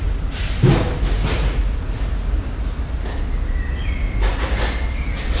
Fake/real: real